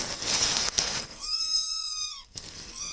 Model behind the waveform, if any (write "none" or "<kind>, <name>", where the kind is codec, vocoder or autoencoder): codec, SNAC